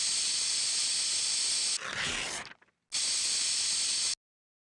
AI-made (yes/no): no